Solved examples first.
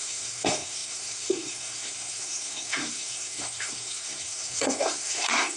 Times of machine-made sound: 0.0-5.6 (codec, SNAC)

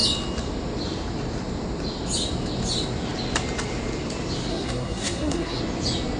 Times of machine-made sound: 4.5-5.6 (codec, SNAC)

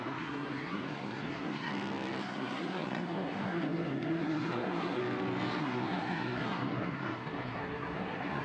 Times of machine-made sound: 0.0-1.7 (codec, SNAC); 2.2-5.0; 5.6-8.4

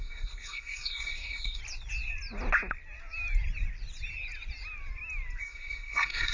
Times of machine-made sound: 0.0-1.6 (codec, SNAC); 5.4-6.3

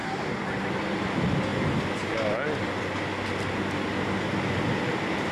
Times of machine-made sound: none

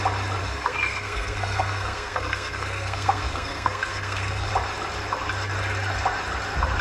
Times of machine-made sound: 0.4-4.5 (codec, SNAC)

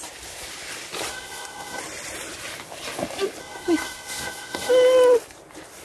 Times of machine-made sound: 1.1-1.8 (codec, SNAC); 3.4-4.7

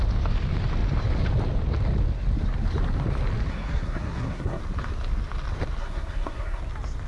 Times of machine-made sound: 3.5-4.6 (codec, SNAC); 5.8-6.6